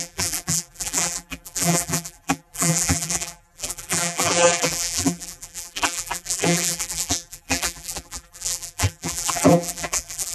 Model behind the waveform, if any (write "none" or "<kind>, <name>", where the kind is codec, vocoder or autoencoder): vocoder, BigVGAN v2